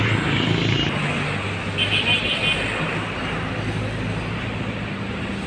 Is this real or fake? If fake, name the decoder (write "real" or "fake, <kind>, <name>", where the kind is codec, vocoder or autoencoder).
real